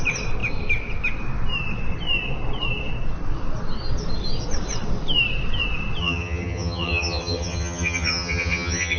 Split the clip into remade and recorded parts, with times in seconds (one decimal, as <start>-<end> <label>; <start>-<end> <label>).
0.0-6.0 recorded; 6.0-9.0 remade